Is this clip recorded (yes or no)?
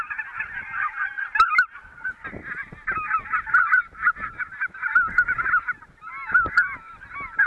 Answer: yes